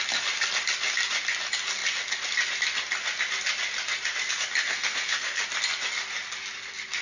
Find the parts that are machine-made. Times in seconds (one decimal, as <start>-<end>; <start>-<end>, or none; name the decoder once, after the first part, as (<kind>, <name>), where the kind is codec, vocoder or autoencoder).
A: 4.7-5.4 (codec, SNAC)